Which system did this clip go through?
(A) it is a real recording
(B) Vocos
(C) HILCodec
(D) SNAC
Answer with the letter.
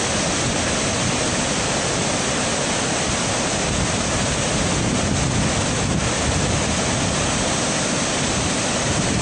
A